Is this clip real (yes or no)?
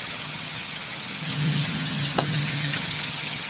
no